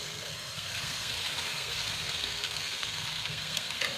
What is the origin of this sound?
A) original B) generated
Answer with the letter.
B